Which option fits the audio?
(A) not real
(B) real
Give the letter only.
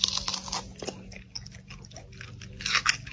B